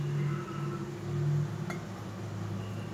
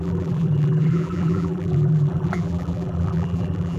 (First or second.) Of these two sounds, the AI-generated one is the second